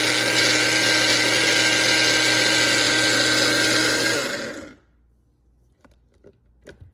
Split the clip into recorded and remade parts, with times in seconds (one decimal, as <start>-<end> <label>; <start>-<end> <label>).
0.0-6.9 recorded